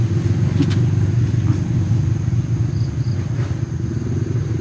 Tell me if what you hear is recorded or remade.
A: recorded